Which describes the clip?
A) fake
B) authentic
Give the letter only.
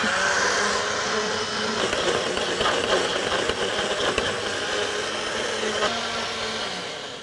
B